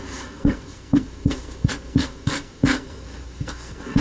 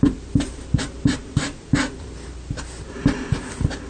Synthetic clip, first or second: first